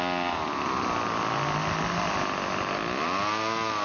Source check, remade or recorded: recorded